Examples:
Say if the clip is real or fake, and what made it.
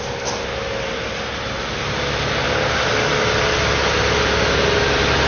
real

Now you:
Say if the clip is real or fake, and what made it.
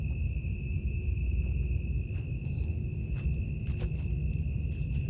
real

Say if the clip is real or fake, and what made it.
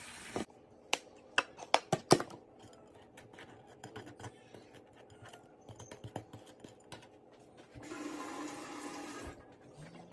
real